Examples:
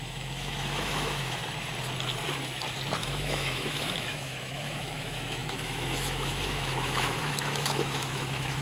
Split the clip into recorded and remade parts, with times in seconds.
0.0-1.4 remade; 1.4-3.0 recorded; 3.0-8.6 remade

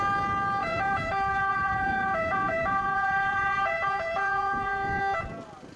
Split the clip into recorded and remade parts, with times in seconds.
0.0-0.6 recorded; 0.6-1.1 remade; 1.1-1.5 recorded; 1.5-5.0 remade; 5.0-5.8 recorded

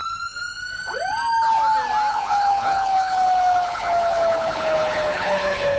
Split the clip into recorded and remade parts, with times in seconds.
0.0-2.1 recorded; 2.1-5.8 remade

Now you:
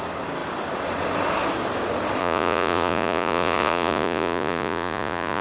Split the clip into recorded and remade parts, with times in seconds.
0.0-2.2 recorded; 2.2-5.4 remade

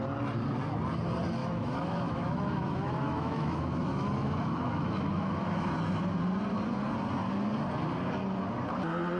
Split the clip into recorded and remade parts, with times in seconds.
0.0-1.4 recorded; 1.4-5.7 remade; 5.7-9.2 recorded

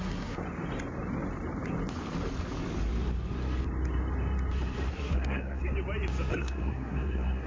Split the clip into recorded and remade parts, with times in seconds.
0.0-0.4 remade; 0.4-4.9 recorded; 4.9-5.6 remade; 5.6-6.3 recorded; 6.3-7.5 remade

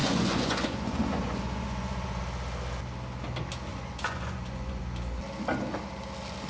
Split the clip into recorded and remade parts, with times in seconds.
0.0-2.2 remade; 2.2-3.7 recorded; 3.7-4.8 remade; 4.8-6.5 recorded